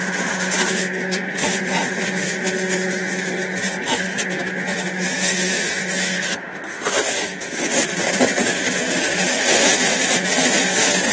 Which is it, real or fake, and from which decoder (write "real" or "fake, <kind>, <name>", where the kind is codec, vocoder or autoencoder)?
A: fake, autoencoder, DAC-VAE